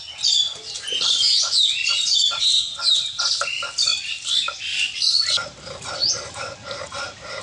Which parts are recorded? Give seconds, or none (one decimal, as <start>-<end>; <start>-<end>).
0.0-3.9; 4.6-5.4; 6.2-7.4